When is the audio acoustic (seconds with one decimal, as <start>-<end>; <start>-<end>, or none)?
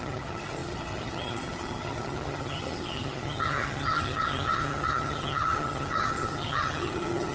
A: none